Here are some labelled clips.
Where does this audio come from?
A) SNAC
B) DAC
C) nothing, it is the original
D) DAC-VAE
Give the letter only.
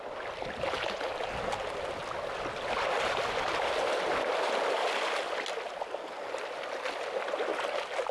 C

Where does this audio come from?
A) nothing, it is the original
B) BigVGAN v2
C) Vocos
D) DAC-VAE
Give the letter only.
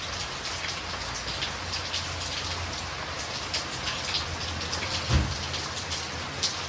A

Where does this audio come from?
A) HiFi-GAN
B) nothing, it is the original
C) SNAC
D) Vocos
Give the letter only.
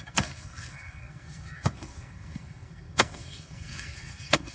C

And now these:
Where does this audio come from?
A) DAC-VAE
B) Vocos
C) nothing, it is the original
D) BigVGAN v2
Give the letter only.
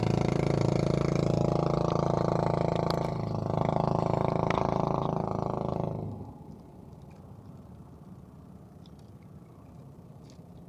C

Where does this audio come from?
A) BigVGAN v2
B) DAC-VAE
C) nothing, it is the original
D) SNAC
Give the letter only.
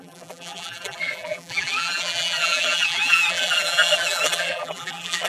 A